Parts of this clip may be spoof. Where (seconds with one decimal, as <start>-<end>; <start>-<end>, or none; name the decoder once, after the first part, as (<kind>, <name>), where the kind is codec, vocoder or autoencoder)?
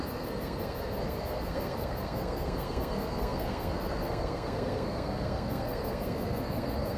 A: 0.0-7.0 (codec, SNAC)